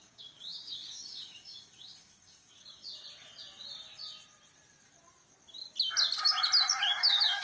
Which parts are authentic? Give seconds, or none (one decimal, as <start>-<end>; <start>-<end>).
2.8-7.0

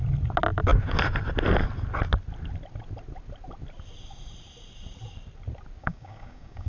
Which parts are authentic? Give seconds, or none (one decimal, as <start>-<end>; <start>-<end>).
0.0-5.8